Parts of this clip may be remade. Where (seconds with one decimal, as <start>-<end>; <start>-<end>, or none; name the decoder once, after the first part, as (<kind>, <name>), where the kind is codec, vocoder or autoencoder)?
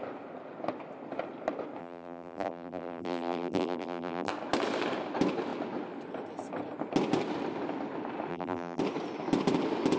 1.8-4.3 (vocoder, BigVGAN v2); 8.3-8.8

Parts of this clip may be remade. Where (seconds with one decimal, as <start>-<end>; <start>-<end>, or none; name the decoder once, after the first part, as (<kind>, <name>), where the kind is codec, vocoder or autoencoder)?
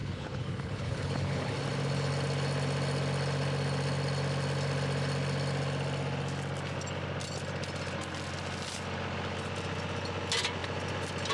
0.0-1.5 (codec, HILCodec)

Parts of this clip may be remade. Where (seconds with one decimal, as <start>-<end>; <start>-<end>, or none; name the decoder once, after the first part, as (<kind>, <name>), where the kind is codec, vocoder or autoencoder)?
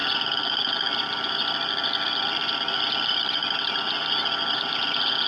none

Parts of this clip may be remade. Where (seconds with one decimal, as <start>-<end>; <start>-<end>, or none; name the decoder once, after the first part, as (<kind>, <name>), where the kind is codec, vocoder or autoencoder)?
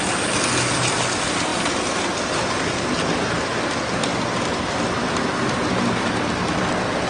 none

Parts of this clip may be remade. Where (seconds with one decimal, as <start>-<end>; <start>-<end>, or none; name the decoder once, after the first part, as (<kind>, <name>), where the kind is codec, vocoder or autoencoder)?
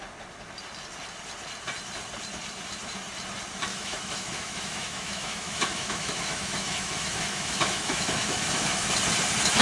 3.7-8.9 (autoencoder, DAC-VAE)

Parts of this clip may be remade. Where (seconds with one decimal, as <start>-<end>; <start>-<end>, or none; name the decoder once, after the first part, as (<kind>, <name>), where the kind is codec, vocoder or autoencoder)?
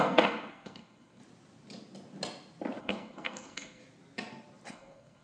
0.0-1.2 (codec, SNAC); 2.8-3.8; 4.7-5.2